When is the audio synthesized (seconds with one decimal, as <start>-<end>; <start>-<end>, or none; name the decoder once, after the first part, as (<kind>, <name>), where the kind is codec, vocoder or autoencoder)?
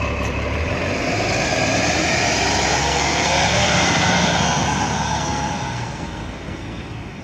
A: 2.8-7.2 (codec, SNAC)